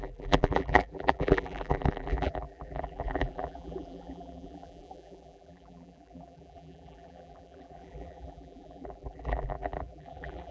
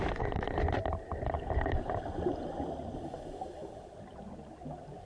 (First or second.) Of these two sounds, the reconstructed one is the first